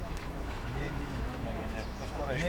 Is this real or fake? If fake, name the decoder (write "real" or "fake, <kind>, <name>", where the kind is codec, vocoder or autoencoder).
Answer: fake, autoencoder, DAC-VAE